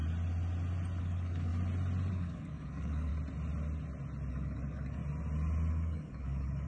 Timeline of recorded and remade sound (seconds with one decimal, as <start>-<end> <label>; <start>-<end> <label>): 0.0-1.0 recorded; 1.0-1.5 remade; 1.5-2.1 recorded; 2.1-3.1 remade; 3.1-4.3 recorded; 4.3-5.0 remade; 5.0-5.7 recorded; 5.7-6.7 remade